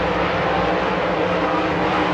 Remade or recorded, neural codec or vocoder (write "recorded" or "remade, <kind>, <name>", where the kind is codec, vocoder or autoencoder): recorded